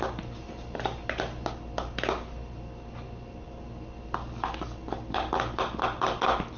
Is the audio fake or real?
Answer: real